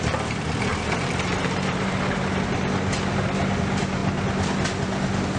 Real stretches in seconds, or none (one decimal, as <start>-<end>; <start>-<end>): 0.0-0.7; 2.0-5.4